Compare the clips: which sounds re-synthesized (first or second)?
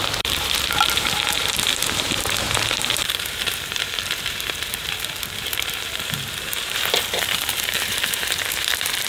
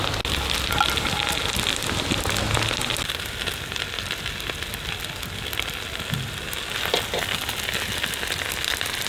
first